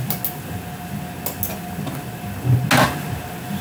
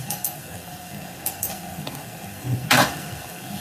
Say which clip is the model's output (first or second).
second